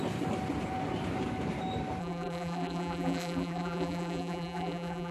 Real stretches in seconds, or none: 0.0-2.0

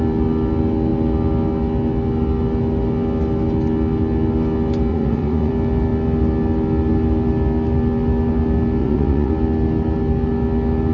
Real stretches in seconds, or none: 0.0-4.9; 5.5-8.8; 9.3-10.9

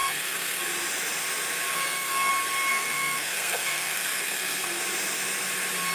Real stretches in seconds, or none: 0.6-1.7; 2.3-2.7; 4.8-5.9